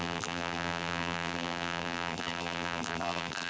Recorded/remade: remade